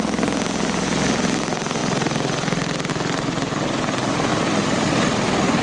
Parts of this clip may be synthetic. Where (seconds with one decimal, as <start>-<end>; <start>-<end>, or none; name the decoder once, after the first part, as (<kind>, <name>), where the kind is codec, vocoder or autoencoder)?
1.8-2.9 (vocoder, BigVGAN v2); 4.3-5.6